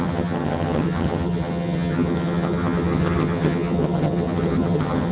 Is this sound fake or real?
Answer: fake